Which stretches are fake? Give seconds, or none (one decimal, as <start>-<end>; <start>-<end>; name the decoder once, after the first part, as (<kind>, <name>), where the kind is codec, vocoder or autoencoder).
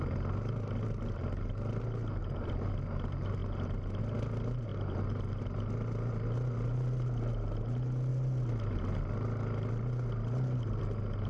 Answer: none